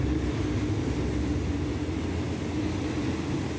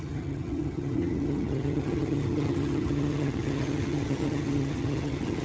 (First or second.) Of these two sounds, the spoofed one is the second